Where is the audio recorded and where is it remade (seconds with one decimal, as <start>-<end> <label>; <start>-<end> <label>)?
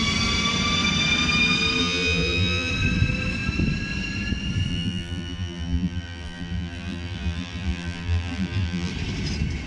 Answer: 0.0-1.8 recorded; 1.8-2.7 remade; 2.7-4.7 recorded; 4.7-8.9 remade; 8.9-9.7 recorded